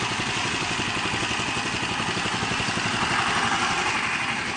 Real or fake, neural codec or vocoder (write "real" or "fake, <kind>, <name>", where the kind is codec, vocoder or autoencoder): real